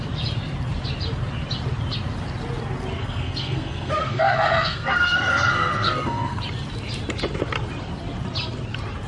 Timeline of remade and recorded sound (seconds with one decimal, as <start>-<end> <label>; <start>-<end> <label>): 0.0-3.0 recorded; 3.0-6.4 remade; 6.4-9.1 recorded